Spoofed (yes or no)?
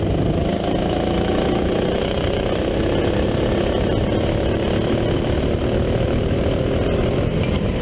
no